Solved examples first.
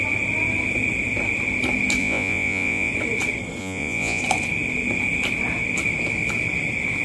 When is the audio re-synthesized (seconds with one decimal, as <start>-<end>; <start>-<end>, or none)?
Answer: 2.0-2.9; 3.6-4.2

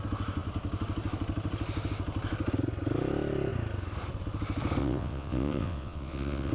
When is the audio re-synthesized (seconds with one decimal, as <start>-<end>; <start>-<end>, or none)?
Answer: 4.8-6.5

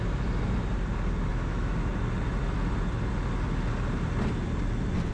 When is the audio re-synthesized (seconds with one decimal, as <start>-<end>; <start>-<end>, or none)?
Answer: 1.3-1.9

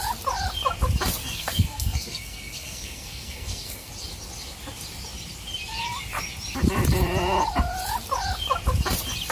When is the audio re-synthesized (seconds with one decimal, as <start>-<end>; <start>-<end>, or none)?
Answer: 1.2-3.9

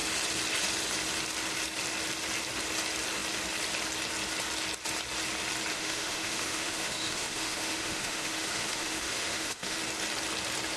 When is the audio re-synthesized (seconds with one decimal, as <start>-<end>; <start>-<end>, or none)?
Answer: 5.7-9.8

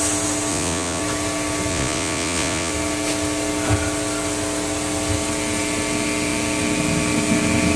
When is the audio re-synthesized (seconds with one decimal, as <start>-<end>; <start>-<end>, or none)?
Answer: 0.5-1.0; 1.7-2.7

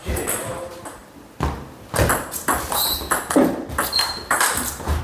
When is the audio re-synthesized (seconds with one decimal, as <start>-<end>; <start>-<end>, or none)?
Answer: 0.0-1.0; 4.0-5.0

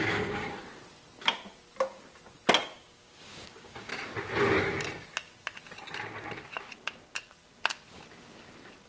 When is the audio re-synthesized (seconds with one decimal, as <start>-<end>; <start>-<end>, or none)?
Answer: 0.0-0.6; 2.6-3.9